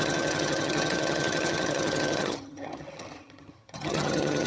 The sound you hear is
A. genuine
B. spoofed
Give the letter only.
B